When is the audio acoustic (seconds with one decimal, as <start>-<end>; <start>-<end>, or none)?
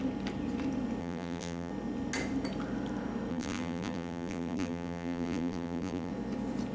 0.0-1.0; 1.7-3.3; 6.1-6.7